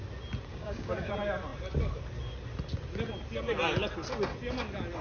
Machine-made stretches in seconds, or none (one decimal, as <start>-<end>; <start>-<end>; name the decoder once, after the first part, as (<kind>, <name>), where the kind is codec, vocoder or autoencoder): 0.5-1.1 (codec, DAC)